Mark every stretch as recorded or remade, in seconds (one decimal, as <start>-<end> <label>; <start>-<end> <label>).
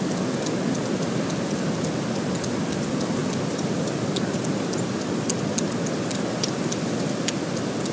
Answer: 0.0-3.2 recorded; 3.2-7.0 remade; 7.0-7.9 recorded